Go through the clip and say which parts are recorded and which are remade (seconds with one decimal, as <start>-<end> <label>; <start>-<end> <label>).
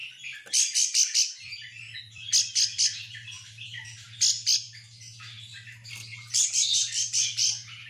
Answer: 0.0-7.9 recorded